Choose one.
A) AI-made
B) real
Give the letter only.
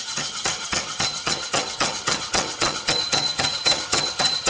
A